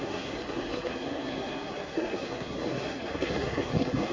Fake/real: fake